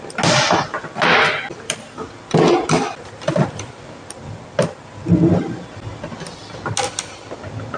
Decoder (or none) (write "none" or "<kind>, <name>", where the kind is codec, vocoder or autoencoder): none